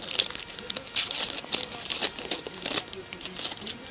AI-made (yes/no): no